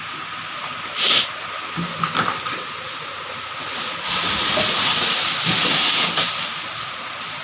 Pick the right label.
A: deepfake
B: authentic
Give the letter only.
B